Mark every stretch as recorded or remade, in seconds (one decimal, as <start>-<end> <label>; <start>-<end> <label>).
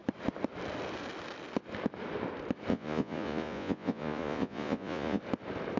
0.0-2.7 recorded; 2.7-5.2 remade; 5.2-5.8 recorded